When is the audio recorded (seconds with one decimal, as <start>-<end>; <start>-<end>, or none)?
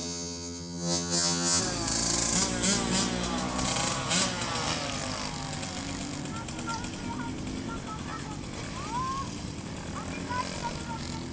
1.6-11.3